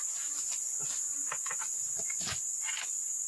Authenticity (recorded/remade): recorded